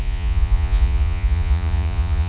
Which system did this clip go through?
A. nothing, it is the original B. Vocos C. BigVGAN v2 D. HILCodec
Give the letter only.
B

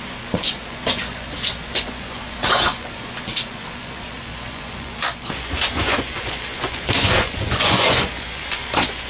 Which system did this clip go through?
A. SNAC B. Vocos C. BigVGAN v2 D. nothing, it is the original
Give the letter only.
B